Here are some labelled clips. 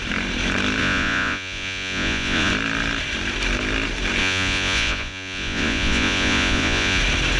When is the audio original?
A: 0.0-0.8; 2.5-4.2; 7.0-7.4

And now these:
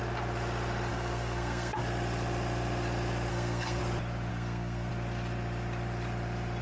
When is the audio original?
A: 0.0-0.9; 1.8-3.3; 3.8-4.3; 4.9-6.6